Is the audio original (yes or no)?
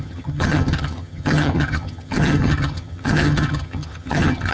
no